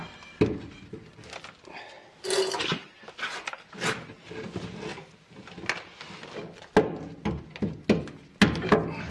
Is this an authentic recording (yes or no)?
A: yes